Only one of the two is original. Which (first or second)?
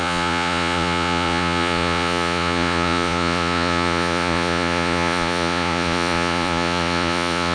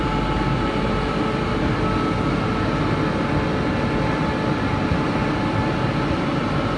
second